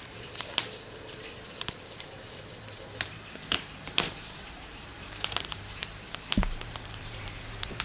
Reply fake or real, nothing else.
fake